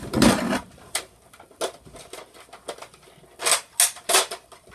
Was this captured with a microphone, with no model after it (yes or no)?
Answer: yes